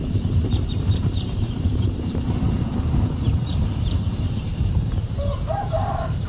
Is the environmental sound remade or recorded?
remade